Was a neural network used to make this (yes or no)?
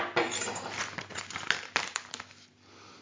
no